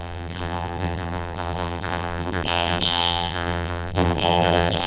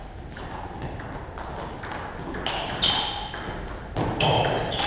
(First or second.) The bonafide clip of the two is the second